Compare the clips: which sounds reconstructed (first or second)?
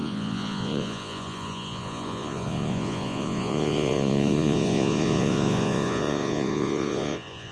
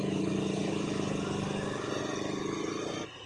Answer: first